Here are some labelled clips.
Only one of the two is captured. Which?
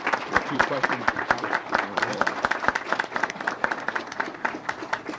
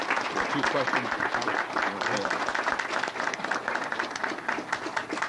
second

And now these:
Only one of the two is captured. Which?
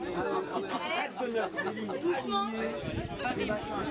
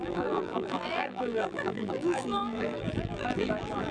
first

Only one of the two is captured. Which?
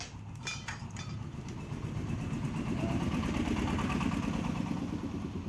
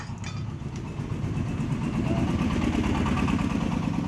second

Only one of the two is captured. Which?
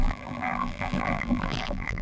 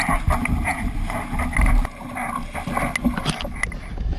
second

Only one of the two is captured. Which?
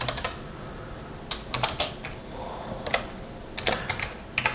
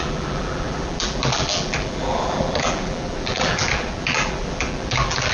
first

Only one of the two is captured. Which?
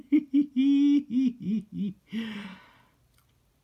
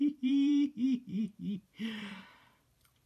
first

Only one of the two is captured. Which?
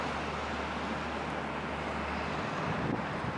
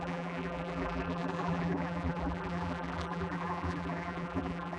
first